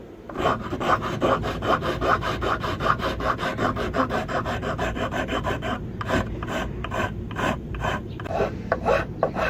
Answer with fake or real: fake